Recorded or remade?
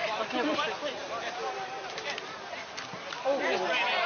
remade